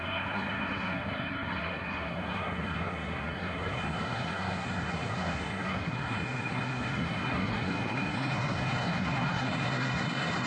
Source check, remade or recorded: remade